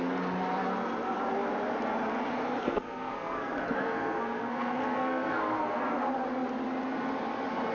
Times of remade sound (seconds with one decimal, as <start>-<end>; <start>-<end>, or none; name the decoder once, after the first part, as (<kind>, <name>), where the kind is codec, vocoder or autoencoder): 2.6-5.8 (codec, SNAC)